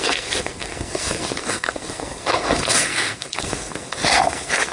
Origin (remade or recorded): remade